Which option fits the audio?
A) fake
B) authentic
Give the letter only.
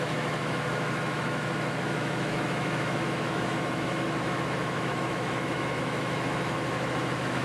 A